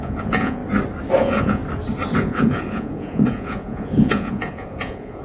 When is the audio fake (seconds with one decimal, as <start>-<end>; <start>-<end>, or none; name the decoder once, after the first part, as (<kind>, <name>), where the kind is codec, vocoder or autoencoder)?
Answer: 0.0-0.6 (vocoder, Vocos); 1.2-1.6; 2.2-5.2